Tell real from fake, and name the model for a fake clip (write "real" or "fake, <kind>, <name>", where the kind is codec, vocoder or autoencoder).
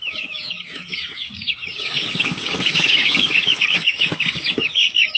fake, codec, DAC